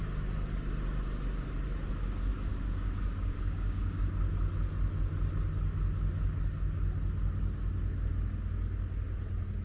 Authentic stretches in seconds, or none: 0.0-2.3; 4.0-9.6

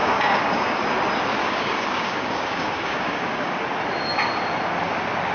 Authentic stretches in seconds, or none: 0.8-1.4; 3.6-5.3

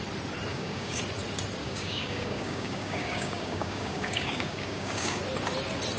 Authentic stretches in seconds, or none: 0.0-0.5; 1.0-1.6; 5.2-6.0

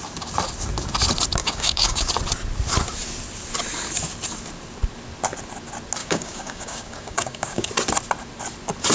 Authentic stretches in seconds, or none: 0.0-1.4; 2.1-6.0; 7.7-8.9

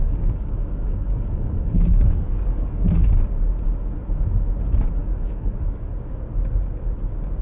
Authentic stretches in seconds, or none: 3.1-5.0; 5.9-7.4